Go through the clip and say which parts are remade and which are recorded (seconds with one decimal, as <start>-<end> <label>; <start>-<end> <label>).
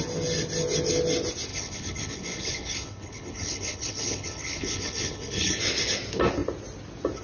0.0-1.5 recorded; 1.5-5.6 remade; 5.6-7.2 recorded